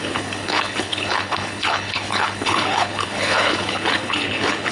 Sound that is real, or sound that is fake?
fake